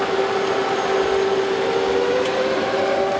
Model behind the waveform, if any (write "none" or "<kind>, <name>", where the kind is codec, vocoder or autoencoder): none